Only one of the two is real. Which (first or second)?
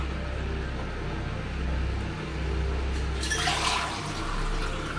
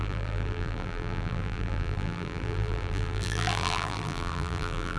first